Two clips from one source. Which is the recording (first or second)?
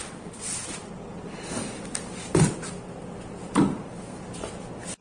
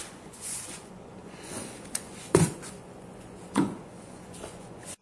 first